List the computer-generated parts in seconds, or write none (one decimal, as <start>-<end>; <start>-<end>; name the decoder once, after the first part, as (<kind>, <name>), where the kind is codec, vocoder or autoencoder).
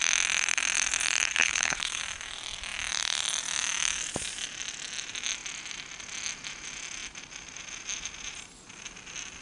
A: 1.3-2.0 (codec, HILCodec)